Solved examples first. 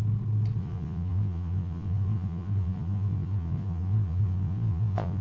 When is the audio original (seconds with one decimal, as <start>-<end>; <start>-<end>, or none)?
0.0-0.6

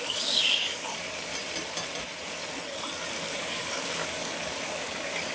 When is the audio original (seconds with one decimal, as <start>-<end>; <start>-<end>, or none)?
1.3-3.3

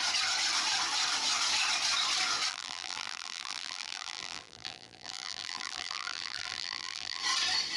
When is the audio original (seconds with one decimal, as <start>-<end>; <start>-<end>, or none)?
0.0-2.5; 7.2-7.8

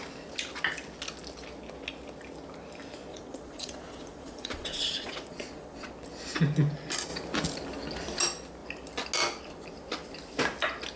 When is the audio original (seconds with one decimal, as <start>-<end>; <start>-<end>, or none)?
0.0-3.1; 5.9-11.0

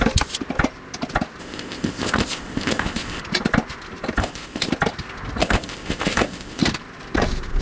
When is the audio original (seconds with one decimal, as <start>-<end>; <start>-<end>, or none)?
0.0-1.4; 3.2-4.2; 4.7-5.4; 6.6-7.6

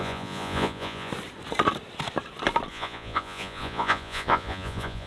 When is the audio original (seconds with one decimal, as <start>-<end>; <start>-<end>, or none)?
1.1-2.7

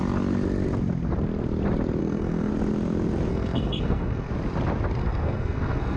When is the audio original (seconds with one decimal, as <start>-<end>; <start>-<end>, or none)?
0.0-2.0; 2.5-3.3; 4.3-5.0

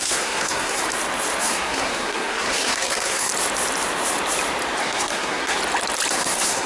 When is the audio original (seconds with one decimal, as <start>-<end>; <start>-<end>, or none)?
0.8-1.4; 3.3-4.8; 5.6-6.1